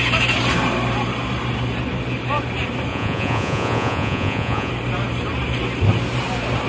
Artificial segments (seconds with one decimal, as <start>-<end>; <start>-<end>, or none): 2.9-4.7